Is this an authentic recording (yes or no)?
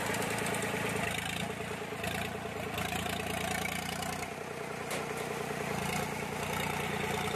yes